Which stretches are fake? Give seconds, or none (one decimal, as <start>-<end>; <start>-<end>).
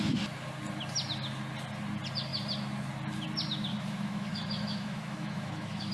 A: 3.7-5.9